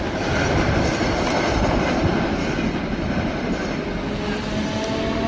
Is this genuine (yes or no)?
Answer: yes